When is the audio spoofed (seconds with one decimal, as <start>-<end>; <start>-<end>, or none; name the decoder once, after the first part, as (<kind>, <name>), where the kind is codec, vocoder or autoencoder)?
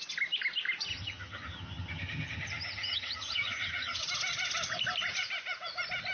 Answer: 0.9-4.0 (vocoder, HiFi-GAN)